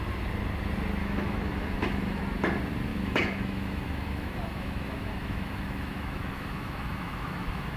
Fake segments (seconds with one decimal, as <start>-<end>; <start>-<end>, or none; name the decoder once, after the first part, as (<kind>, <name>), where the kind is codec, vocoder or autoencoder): 1.0-2.2 (autoencoder, DAC-VAE); 2.9-7.8